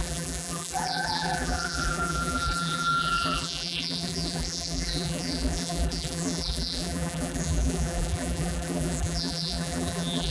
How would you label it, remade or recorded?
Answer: remade